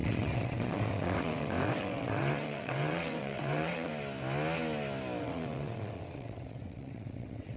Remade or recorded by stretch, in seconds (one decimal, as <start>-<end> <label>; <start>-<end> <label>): 0.0-3.9 remade; 3.9-5.2 recorded; 5.2-7.6 remade